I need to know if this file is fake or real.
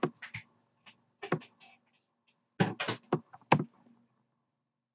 real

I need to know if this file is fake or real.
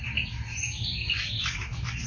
real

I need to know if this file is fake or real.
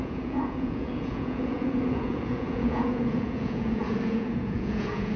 fake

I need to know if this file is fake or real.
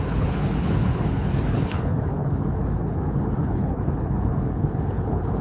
fake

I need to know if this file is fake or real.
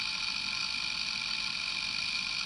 real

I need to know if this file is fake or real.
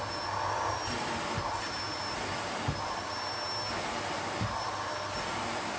real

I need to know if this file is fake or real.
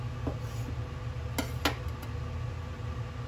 real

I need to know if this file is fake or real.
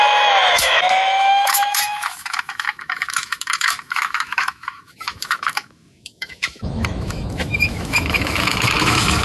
fake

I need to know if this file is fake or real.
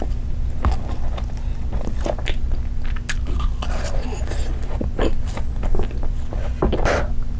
real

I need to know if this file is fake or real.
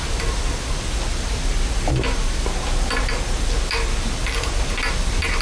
real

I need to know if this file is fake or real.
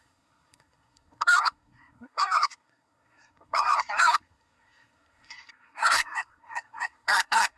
fake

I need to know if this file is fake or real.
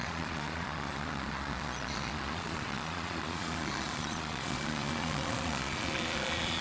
fake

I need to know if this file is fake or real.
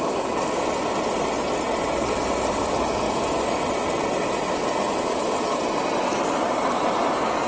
real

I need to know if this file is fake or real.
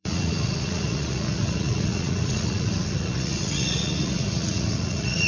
fake